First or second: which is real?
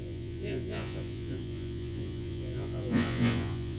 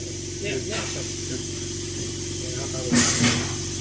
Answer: second